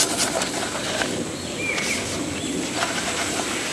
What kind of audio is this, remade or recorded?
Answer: recorded